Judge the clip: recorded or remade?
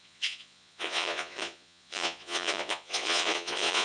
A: remade